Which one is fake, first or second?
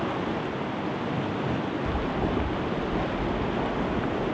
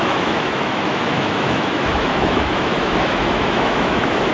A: second